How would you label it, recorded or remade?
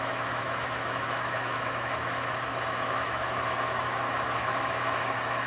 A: remade